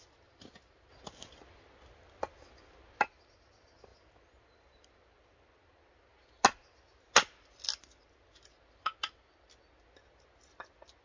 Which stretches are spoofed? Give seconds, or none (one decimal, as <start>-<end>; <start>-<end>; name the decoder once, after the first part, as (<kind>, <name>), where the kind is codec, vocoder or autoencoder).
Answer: none